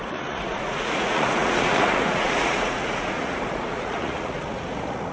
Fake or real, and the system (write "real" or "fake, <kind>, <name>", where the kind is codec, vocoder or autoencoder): fake, vocoder, Vocos